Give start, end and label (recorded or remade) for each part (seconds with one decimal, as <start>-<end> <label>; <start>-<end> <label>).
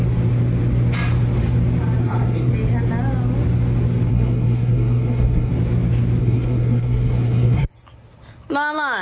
0.0-2.0 recorded; 2.0-2.5 remade; 2.5-4.1 recorded; 4.1-5.5 remade; 5.5-6.2 recorded; 6.2-7.7 remade; 7.7-9.0 recorded